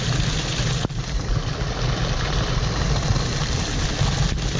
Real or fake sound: real